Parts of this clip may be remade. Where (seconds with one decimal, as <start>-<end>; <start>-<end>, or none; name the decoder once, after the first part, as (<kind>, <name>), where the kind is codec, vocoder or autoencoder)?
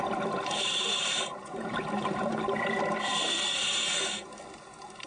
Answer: 1.3-2.8 (vocoder, BigVGAN v2)